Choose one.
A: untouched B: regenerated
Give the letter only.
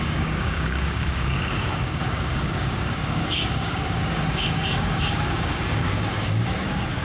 B